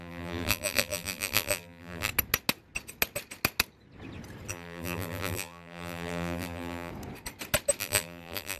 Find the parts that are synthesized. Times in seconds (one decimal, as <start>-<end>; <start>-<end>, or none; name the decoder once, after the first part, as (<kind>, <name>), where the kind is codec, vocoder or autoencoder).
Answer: 0.0-2.1 (vocoder, BigVGAN v2); 4.5-6.9; 7.8-8.6

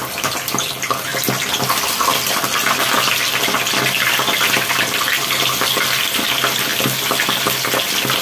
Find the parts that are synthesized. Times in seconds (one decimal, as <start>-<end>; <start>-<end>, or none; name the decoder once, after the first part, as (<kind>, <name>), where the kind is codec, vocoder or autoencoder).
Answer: 0.0-1.1 (vocoder, BigVGAN v2); 1.7-6.7; 7.4-8.2

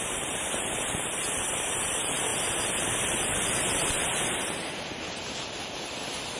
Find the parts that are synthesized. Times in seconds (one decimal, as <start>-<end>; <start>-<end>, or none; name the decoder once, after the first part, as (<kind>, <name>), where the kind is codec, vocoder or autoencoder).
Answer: 0.0-2.3 (vocoder, BigVGAN v2); 2.9-6.4

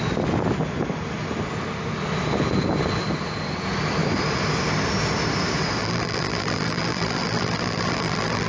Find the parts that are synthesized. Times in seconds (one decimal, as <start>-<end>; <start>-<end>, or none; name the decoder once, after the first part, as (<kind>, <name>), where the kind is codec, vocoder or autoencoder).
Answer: 5.8-8.5 (vocoder, BigVGAN v2)

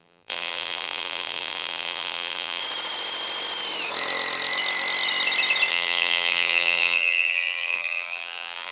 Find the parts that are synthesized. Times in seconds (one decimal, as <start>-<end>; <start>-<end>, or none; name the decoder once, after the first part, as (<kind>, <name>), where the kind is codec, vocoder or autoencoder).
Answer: 0.0-2.6 (vocoder, BigVGAN v2); 5.7-8.7

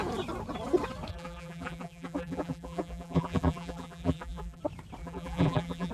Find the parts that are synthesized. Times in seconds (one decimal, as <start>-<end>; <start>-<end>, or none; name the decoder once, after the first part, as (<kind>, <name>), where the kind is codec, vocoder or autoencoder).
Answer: 1.1-4.6 (vocoder, BigVGAN v2); 5.0-5.9

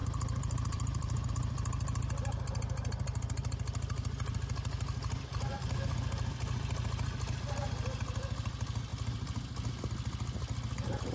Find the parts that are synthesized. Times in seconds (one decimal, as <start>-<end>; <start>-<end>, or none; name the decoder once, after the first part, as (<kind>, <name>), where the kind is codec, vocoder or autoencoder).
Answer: 0.0-1.3 (vocoder, BigVGAN v2)

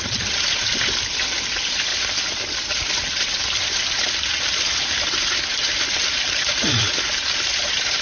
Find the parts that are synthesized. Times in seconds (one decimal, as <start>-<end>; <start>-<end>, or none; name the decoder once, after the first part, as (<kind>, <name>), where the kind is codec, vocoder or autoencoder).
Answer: 5.5-7.1 (vocoder, BigVGAN v2)